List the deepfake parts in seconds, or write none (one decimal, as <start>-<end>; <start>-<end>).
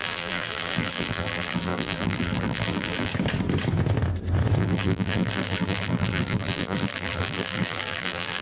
0.0-3.1; 4.6-8.4